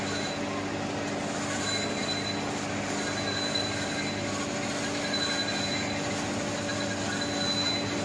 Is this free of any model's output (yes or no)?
yes